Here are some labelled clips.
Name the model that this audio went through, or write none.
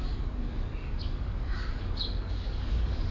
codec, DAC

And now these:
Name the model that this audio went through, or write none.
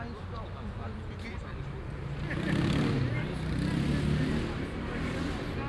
none